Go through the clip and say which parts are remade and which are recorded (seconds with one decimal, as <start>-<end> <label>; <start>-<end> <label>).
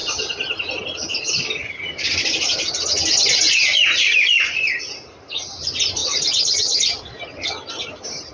0.0-8.3 recorded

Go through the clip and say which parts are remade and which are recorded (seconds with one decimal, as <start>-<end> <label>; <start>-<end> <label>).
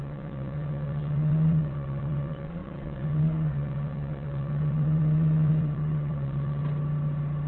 0.0-6.6 remade; 6.6-7.5 recorded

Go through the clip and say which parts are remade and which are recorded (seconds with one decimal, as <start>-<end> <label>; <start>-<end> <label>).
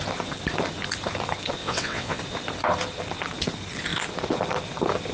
0.0-1.6 recorded; 1.6-2.2 remade; 2.2-5.1 recorded